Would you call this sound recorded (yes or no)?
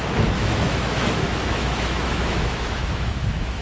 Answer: no